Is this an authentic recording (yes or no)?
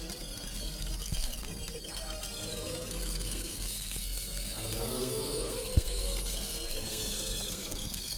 no